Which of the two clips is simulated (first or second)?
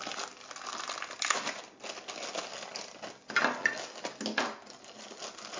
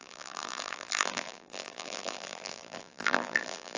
second